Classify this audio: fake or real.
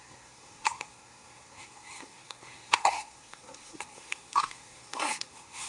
fake